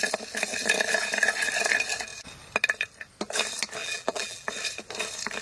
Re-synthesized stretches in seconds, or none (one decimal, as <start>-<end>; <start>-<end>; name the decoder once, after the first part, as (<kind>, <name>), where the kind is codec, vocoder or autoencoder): 3.8-4.5 (vocoder, BigVGAN v2)